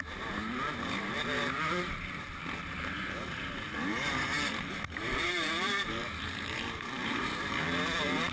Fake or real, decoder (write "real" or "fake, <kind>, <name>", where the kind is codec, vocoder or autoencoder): fake, vocoder, BigVGAN v2